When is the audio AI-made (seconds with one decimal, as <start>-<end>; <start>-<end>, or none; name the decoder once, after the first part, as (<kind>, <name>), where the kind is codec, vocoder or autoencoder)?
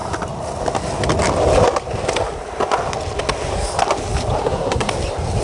4.4-4.9 (codec, SNAC)